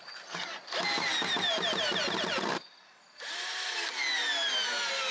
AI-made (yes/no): no